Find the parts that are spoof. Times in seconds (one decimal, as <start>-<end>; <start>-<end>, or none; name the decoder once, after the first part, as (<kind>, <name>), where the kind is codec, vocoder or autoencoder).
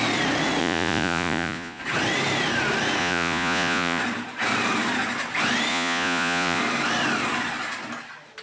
0.6-1.8 (vocoder, Vocos); 3.0-4.0; 5.7-6.6